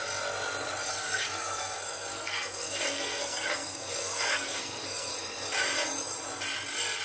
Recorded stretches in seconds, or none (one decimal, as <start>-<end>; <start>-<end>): 0.0-0.9; 5.1-7.0